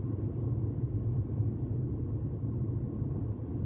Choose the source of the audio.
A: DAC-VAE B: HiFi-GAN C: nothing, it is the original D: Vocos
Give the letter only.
C